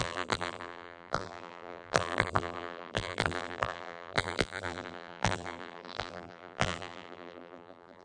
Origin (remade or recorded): remade